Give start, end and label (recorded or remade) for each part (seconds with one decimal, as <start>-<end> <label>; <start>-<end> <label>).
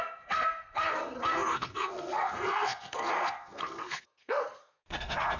0.0-5.4 remade